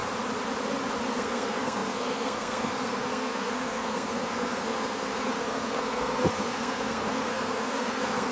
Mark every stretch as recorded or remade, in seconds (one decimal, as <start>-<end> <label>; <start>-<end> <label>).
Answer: 0.0-1.1 recorded; 1.1-8.3 remade